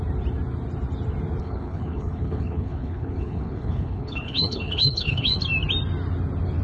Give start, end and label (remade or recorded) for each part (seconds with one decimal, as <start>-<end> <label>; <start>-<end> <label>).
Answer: 0.0-1.4 recorded; 1.4-5.4 remade; 5.4-6.6 recorded